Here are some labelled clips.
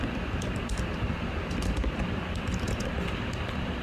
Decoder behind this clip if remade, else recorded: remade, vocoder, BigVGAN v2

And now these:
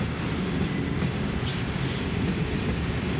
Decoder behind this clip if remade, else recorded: recorded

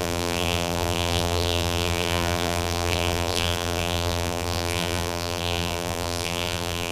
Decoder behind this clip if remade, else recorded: remade, vocoder, BigVGAN v2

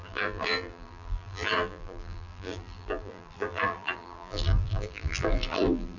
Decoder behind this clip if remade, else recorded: remade, vocoder, BigVGAN v2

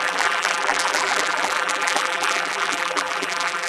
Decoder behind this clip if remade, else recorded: remade, vocoder, BigVGAN v2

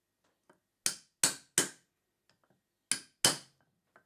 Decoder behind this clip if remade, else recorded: recorded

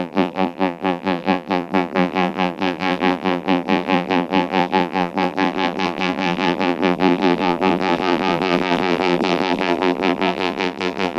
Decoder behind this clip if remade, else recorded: remade, vocoder, BigVGAN v2